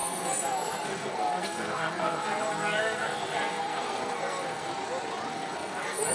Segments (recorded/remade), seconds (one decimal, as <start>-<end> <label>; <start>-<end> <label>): 0.0-4.7 remade; 4.7-5.3 recorded; 5.3-6.1 remade